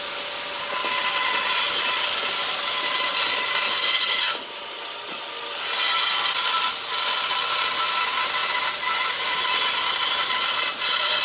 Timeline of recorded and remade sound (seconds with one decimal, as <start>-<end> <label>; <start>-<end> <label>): 0.0-10.7 recorded; 10.7-11.2 remade